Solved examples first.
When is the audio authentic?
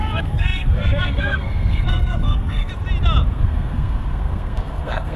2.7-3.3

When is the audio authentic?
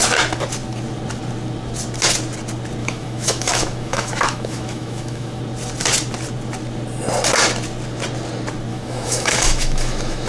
0.0-2.8; 5.4-8.7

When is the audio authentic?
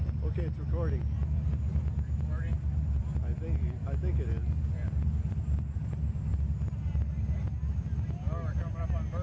0.0-9.2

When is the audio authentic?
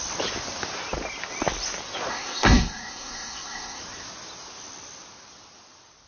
0.0-2.1; 3.8-6.1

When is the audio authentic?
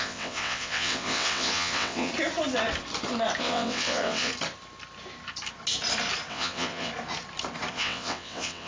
2.1-3.4; 4.3-6.3; 6.9-7.7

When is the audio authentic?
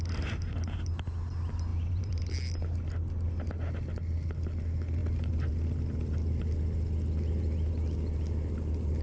0.0-1.7; 2.3-9.0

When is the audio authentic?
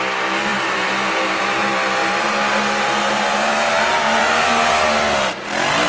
0.0-0.5; 1.6-2.0; 4.7-5.9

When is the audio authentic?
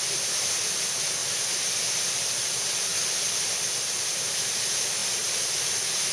0.0-6.1